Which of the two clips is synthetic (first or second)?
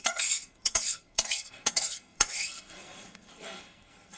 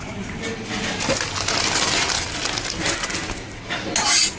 first